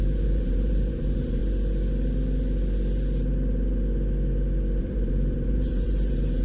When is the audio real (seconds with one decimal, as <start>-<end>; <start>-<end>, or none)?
1.4-4.8